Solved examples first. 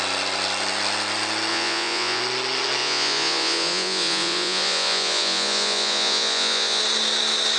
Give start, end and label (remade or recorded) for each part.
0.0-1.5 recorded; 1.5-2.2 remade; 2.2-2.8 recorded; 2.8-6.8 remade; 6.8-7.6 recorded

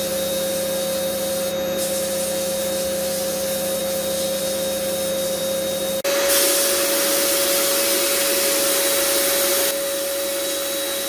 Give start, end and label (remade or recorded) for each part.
0.0-11.1 recorded

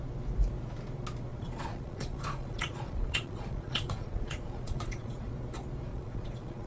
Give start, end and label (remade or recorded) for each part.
0.0-1.3 recorded; 1.3-5.3 remade; 5.3-5.9 recorded; 5.9-6.7 remade

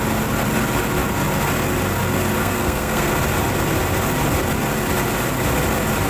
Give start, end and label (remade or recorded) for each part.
0.0-2.4 recorded; 2.4-3.1 remade; 3.1-6.1 recorded

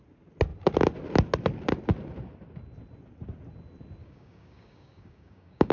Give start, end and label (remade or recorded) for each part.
0.0-4.0 recorded; 4.0-5.7 remade

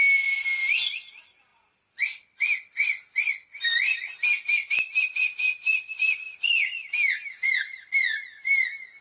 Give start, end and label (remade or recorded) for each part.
0.0-9.0 recorded

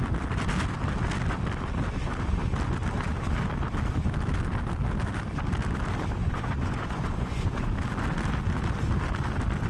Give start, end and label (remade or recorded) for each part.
0.0-6.2 recorded; 6.2-7.7 remade; 7.7-9.7 recorded

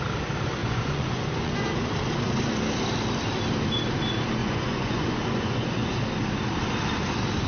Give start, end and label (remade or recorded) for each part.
0.0-0.6 recorded; 0.6-1.8 remade; 1.8-4.4 recorded; 4.4-5.9 remade; 5.9-7.5 recorded